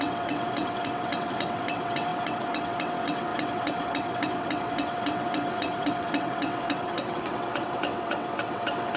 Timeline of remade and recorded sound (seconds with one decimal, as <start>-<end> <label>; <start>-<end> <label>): 0.0-9.0 remade